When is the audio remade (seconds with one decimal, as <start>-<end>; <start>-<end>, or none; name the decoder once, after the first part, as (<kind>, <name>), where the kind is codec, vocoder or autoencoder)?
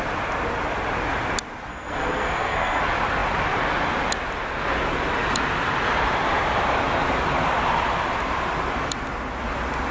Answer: 1.7-2.8 (codec, SNAC)